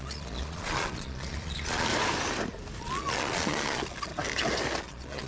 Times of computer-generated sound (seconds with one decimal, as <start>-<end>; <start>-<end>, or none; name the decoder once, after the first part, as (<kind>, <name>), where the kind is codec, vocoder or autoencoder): 0.0-1.9 (vocoder, Vocos); 2.8-4.1; 4.8-5.3